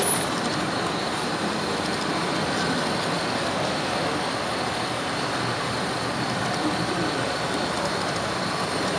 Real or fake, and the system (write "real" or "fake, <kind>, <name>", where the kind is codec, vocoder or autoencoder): fake, vocoder, BigVGAN v2